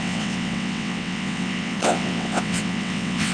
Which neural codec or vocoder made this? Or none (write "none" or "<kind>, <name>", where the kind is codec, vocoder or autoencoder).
vocoder, WaveNeXt